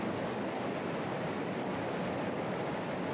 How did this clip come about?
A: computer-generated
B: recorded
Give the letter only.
B